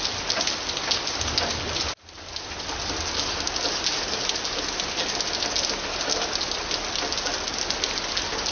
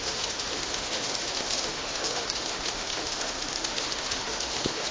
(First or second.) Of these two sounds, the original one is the first